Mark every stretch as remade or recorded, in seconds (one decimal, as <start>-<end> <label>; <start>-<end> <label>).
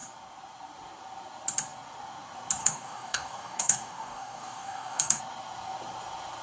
0.0-2.6 recorded; 2.6-5.2 remade; 5.2-6.4 recorded